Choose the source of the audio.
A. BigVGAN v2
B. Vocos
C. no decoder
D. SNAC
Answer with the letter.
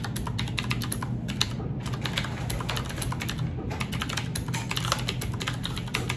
C